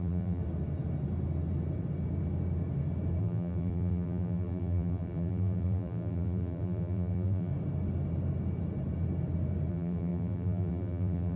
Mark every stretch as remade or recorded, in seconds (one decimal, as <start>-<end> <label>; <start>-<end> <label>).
0.0-0.4 remade; 0.4-3.2 recorded; 3.2-7.5 remade; 7.5-9.7 recorded; 9.7-11.4 remade